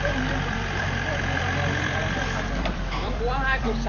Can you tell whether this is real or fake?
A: fake